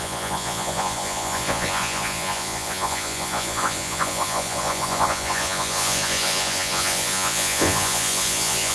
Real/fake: fake